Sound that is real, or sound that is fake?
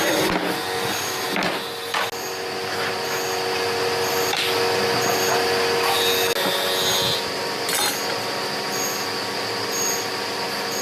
real